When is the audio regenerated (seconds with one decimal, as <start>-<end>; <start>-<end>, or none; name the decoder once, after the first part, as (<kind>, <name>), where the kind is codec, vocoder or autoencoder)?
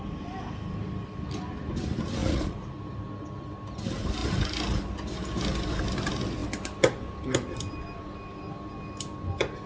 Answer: 2.2-2.7 (vocoder, Vocos)